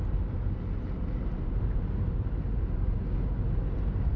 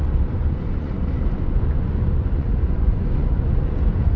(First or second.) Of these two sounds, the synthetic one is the second